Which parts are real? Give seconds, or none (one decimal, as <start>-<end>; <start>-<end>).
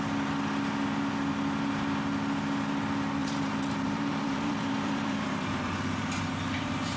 0.0-3.2; 6.3-7.0